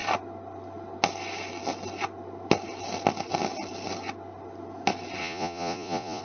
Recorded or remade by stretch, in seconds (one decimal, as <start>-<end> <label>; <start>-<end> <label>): 0.0-5.2 recorded; 5.2-6.2 remade